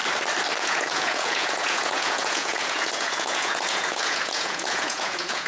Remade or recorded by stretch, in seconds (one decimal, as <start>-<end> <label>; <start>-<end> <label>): 0.0-0.6 recorded; 0.6-5.5 remade